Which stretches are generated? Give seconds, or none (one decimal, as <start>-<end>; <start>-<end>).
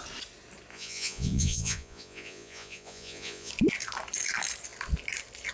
0.7-3.5